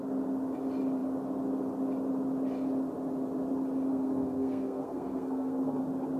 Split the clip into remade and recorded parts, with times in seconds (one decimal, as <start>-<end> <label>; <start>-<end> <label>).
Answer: 0.0-3.9 recorded; 3.9-5.8 remade; 5.8-6.2 recorded